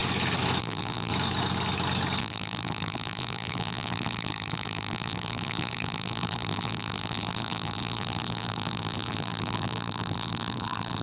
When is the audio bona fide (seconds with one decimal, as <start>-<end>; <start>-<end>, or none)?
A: 0.0-0.6; 1.1-2.2